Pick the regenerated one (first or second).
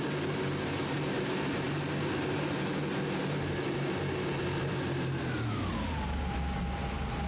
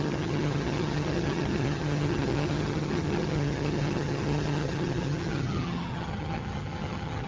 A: second